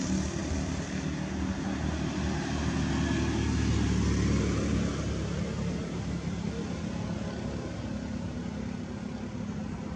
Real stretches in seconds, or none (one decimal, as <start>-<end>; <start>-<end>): 0.0-10.0

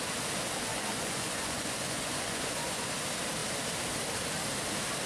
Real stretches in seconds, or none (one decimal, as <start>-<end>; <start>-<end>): 0.0-0.7; 2.9-5.1